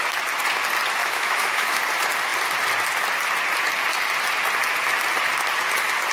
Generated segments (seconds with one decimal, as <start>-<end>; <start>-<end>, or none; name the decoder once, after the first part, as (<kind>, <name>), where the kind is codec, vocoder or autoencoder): 1.0-1.8 (autoencoder, DAC-VAE)